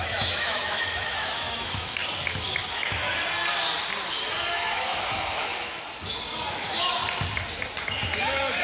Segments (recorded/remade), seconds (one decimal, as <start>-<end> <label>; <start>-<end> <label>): 0.0-2.0 remade; 2.0-2.7 recorded; 2.7-3.1 remade; 3.1-4.5 recorded; 4.5-5.5 remade; 5.5-6.5 recorded; 6.5-7.0 remade; 7.0-8.2 recorded; 8.2-8.6 remade